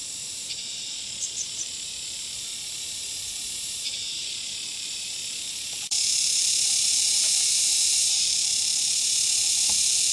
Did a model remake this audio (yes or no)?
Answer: yes